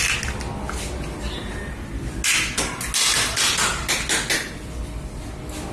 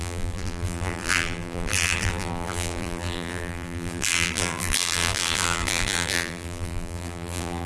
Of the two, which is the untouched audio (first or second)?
first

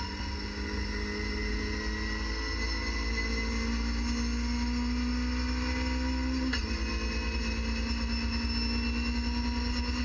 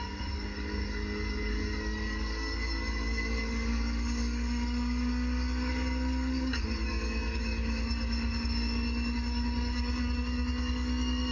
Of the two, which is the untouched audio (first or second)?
first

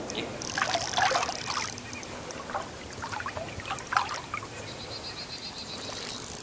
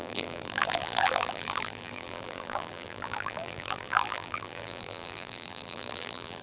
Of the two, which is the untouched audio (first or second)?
first